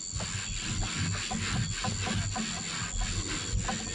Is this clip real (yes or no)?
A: yes